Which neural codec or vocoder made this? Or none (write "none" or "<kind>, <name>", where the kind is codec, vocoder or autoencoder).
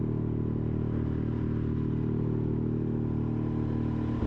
none